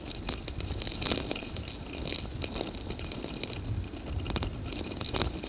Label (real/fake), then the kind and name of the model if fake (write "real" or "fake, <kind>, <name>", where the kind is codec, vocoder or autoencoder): real